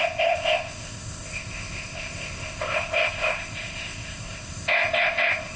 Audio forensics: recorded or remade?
remade